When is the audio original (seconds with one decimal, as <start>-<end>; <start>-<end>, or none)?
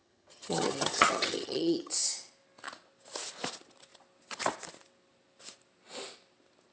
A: 1.9-6.7